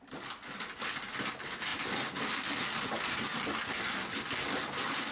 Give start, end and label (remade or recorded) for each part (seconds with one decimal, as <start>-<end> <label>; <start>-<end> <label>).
0.0-5.1 recorded

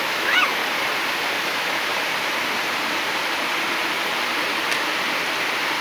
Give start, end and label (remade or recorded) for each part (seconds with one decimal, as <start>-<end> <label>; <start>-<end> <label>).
0.0-0.6 remade; 0.6-1.4 recorded; 1.4-1.9 remade; 1.9-5.8 recorded